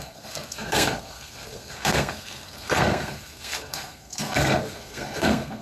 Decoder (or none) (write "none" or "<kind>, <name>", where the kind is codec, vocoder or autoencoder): codec, SNAC